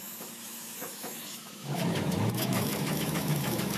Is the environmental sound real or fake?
fake